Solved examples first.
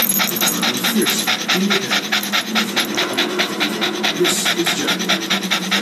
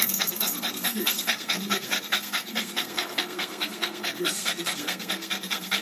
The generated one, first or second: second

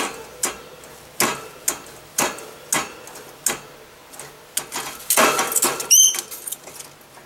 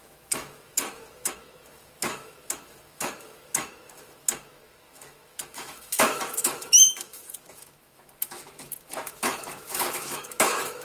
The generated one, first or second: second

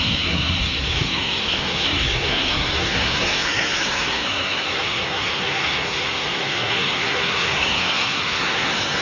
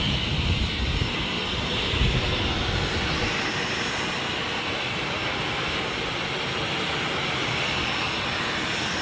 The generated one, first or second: first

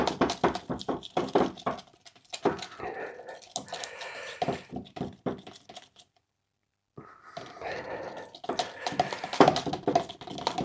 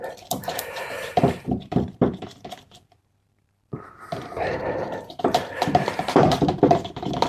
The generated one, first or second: second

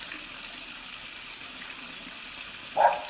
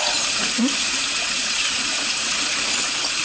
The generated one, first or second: second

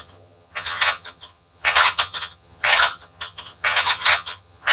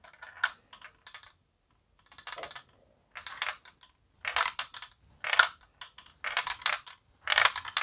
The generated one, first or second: first